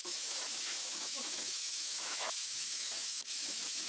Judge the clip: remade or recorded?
remade